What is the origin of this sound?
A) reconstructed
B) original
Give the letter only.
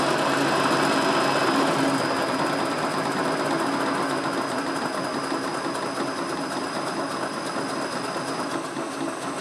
B